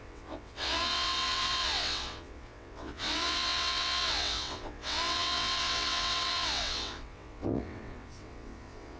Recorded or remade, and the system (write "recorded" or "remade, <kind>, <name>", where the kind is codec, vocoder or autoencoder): remade, vocoder, WaveNeXt